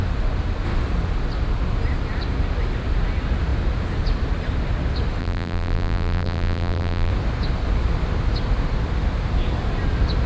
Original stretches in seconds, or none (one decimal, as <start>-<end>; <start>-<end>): 0.0-5.2; 7.1-10.3